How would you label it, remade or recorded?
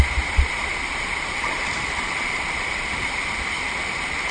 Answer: remade